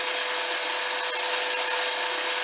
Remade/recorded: recorded